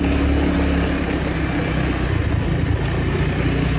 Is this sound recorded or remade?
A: recorded